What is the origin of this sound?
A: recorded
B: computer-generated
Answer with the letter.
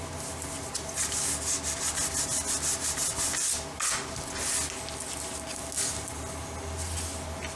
A